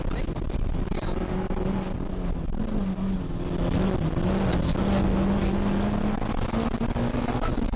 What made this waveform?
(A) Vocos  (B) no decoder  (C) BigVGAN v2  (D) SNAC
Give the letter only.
B